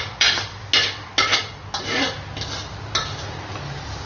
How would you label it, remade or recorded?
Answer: recorded